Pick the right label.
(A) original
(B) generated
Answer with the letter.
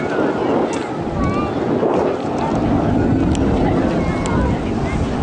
A